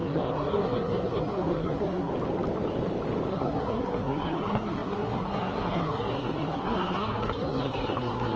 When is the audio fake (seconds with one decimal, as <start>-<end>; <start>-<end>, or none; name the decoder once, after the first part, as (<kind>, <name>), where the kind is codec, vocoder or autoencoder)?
0.0-2.1 (codec, SNAC); 3.3-8.4